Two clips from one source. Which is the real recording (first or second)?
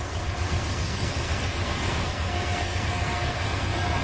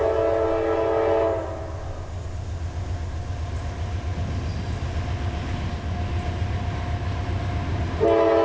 second